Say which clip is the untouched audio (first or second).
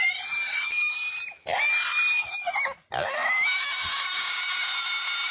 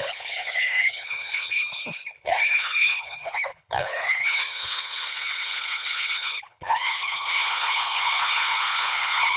first